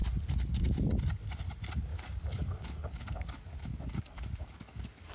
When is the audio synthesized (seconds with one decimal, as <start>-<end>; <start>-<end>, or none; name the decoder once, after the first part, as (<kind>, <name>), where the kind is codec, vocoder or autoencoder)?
1.9-5.1 (codec, DAC)